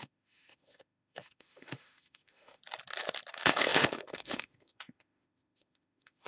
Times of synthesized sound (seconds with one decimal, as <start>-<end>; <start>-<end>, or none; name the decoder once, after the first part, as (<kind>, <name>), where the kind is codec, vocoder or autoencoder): 0.0-2.6 (autoencoder, DAC-VAE); 3.3-6.3